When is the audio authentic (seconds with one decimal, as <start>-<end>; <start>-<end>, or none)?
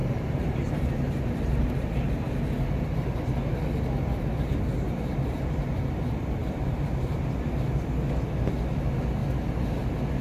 1.7-6.4; 7.3-10.2